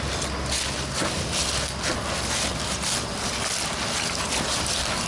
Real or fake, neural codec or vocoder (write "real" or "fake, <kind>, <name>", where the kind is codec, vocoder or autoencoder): real